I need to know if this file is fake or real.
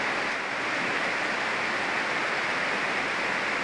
real